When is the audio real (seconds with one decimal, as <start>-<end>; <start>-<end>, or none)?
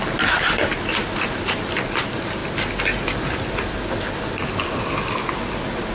0.0-5.9